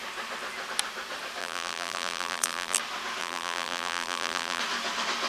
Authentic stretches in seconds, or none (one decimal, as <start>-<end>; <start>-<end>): 0.0-1.4; 2.8-3.2; 4.6-5.3